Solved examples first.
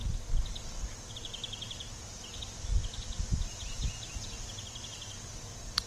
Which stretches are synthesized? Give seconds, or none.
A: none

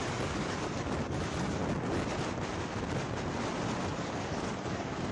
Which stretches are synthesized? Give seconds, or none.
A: 0.0-1.6 (codec, DAC); 3.9-5.1

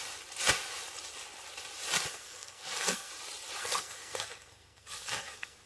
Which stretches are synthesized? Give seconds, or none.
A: 2.1-3.1 (codec, SNAC); 3.6-5.7

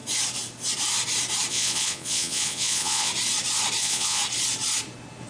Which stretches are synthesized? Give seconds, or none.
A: 1.5-3.1 (vocoder, Vocos); 3.8-4.2

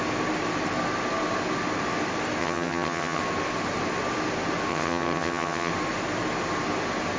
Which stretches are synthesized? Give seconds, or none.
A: 2.4-3.2 (vocoder, HiFi-GAN); 4.7-5.7

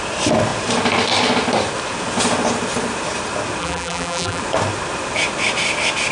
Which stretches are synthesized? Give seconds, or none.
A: 3.6-4.4 (vocoder, BigVGAN v2)

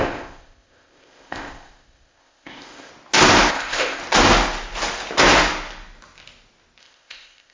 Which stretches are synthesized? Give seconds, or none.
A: 0.0-2.9 (codec, ZipCodec); 3.5-4.0; 6.8-7.5